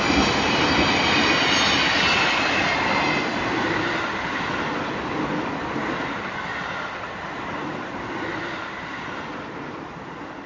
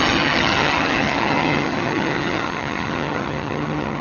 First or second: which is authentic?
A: first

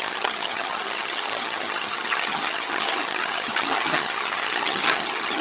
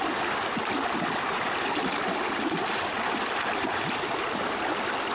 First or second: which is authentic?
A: second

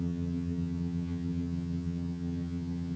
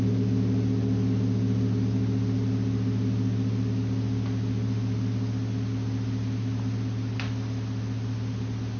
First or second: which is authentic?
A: second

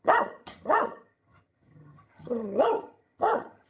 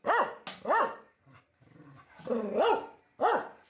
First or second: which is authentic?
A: second